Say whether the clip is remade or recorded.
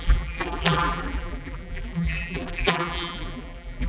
remade